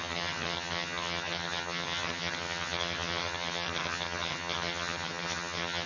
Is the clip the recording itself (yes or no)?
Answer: no